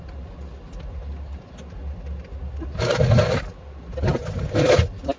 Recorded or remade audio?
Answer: recorded